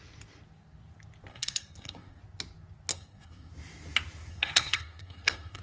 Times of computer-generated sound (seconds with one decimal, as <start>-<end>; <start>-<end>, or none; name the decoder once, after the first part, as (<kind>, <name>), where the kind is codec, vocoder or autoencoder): 1.3-2.2 (codec, SNAC); 2.9-3.5; 4.3-5.6